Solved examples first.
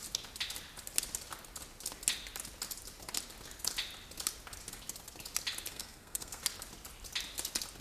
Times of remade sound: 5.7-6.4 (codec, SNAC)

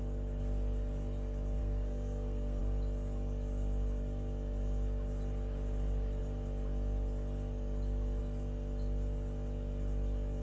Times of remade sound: 1.6-2.6 (codec, SNAC)

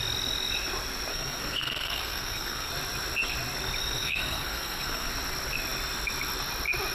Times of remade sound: 1.1-2.7 (codec, SNAC); 3.8-5.1

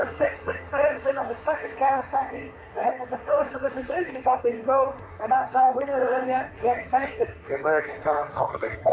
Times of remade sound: 0.0-8.9 (codec, SNAC)

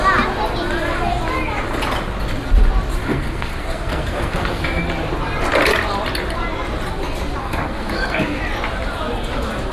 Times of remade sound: 3.0-4.8 (codec, SNAC); 7.4-8.4

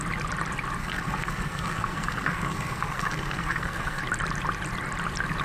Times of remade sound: 0.8-4.0 (codec, SNAC)

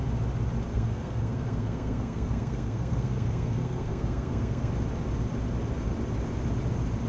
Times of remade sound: 0.7-4.7 (codec, SNAC)

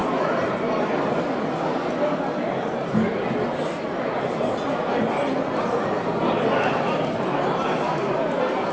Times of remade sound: none